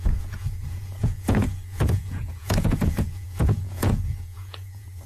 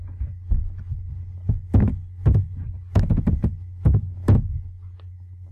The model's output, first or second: first